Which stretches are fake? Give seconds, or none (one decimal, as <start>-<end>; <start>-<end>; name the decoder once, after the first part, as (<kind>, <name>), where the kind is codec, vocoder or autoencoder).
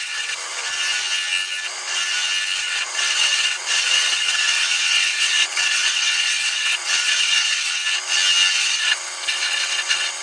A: 0.0-0.6 (vocoder, WaveNeXt); 2.6-7.8; 8.5-10.2